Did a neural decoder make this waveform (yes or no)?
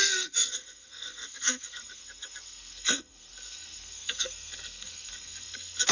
yes